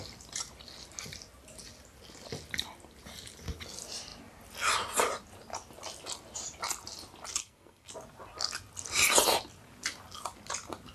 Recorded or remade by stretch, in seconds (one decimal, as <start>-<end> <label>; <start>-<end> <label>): 0.0-7.4 recorded; 7.4-7.9 remade; 7.9-10.9 recorded

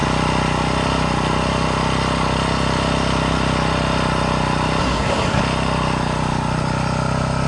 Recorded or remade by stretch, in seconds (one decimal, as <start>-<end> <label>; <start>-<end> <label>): 0.0-4.8 recorded; 4.8-5.4 remade; 5.4-7.5 recorded